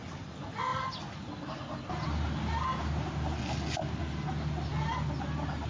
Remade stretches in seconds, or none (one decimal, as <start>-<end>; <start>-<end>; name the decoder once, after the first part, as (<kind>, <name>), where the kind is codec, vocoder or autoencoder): none